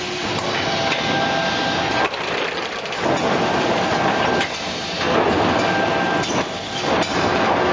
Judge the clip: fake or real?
real